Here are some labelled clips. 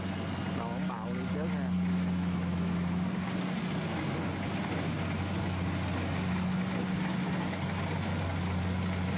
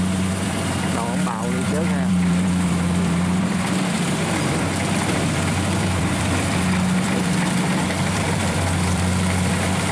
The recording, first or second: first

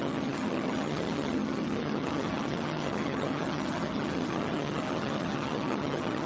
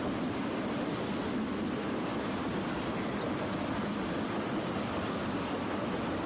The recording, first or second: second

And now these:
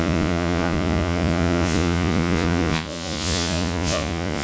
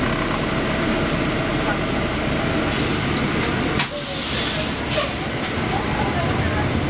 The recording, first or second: second